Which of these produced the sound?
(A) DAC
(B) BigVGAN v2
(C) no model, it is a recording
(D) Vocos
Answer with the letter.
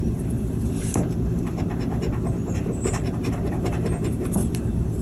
B